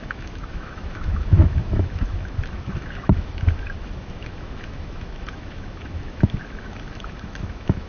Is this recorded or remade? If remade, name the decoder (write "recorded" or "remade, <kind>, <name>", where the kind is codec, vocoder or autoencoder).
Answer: remade, autoencoder, DAC-VAE